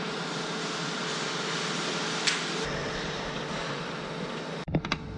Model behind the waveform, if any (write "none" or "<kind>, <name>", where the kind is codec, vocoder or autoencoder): none